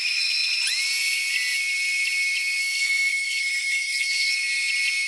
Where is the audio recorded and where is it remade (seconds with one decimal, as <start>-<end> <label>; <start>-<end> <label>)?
0.0-2.6 recorded; 2.6-4.3 remade; 4.3-5.1 recorded